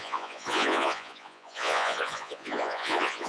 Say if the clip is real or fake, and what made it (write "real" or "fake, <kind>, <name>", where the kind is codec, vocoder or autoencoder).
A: fake, vocoder, Vocos